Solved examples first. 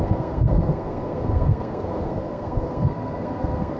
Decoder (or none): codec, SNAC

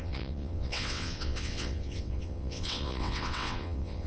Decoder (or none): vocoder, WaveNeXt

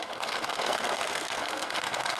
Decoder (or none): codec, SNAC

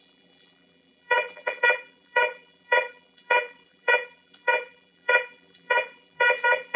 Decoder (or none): vocoder, BigVGAN v2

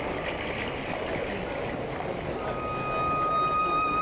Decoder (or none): none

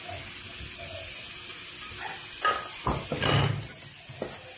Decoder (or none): none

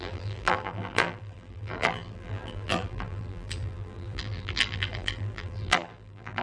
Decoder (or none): vocoder, BigVGAN v2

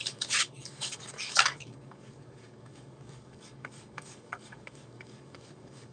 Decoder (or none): codec, DAC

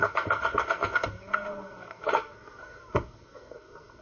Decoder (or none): codec, SNAC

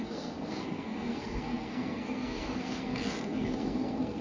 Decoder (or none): codec, SNAC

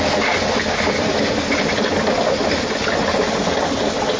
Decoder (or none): none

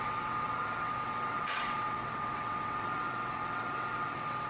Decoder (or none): vocoder, WaveNeXt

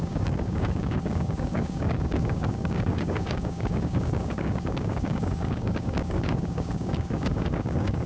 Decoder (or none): codec, DAC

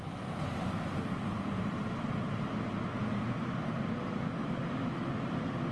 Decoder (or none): none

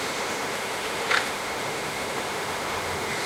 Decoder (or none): autoencoder, DAC-VAE